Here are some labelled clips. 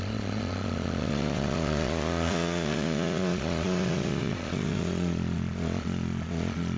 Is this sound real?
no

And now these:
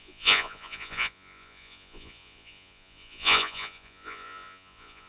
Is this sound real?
no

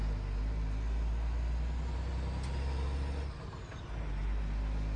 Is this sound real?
yes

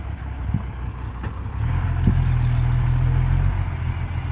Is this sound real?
yes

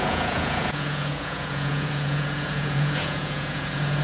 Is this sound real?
no